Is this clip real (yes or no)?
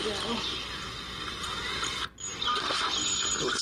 yes